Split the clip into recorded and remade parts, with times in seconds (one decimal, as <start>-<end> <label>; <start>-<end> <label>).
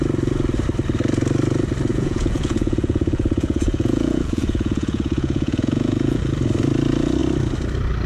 0.0-1.9 recorded; 1.9-6.2 remade; 6.2-8.1 recorded